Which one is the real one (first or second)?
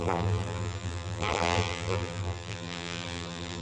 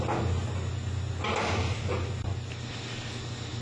second